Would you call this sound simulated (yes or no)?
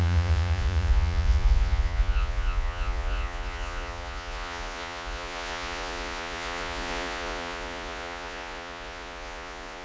yes